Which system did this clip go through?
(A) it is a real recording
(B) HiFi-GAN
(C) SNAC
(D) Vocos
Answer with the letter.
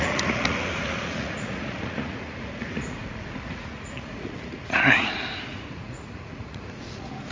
D